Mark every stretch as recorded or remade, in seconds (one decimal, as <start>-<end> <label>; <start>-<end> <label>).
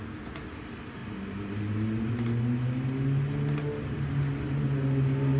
0.0-5.4 recorded